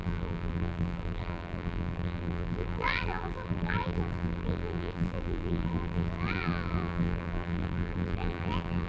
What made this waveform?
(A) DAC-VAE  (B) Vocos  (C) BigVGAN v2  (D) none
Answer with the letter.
C